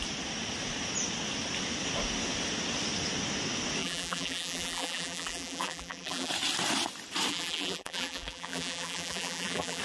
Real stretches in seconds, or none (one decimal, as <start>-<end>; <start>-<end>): 0.0-3.8; 6.3-7.3